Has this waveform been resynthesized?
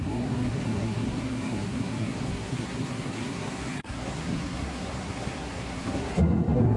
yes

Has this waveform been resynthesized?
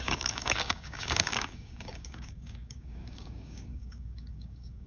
yes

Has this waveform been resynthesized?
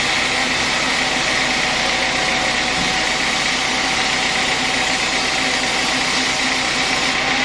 no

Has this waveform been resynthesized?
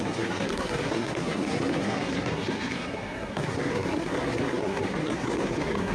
yes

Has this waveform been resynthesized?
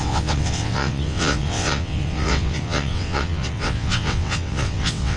yes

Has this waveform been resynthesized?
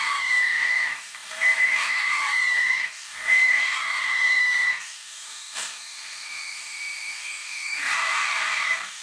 yes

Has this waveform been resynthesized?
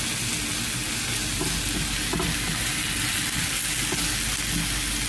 no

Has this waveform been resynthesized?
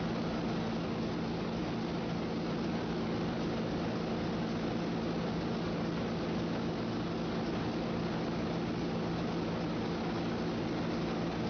no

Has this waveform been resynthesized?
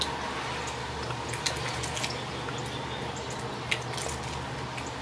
no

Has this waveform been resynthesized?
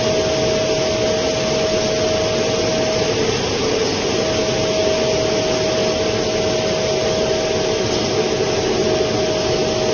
no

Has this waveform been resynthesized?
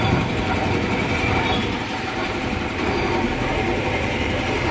yes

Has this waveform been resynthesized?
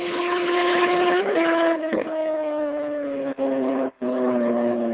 yes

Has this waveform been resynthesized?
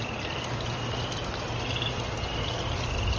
no